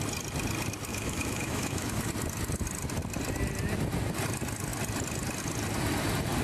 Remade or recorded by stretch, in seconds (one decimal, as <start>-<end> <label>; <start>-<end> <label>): 0.0-0.9 recorded; 0.9-2.1 remade; 2.1-6.4 recorded